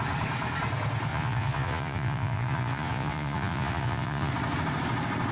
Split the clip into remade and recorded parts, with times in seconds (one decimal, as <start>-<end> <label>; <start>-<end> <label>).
0.0-1.1 recorded; 1.1-4.3 remade; 4.3-5.3 recorded